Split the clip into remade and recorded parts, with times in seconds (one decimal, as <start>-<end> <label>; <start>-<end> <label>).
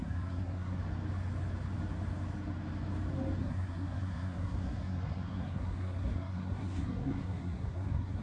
0.0-0.8 remade; 0.8-3.4 recorded; 3.4-8.2 remade